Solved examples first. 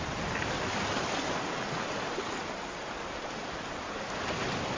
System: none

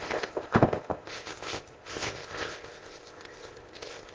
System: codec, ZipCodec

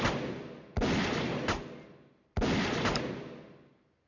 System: none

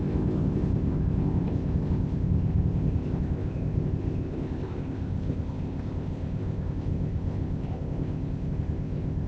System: codec, ZipCodec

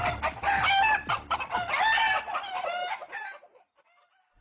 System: none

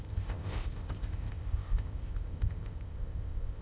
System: codec, ZipCodec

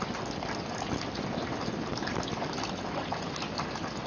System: none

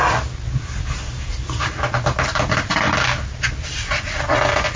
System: none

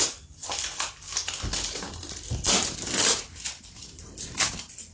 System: none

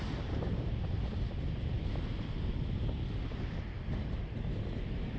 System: none